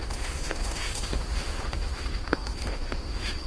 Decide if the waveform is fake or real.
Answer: fake